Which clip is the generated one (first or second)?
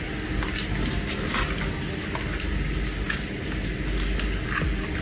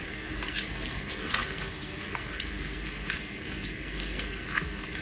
second